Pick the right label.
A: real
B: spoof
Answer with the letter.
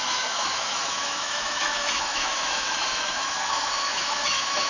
B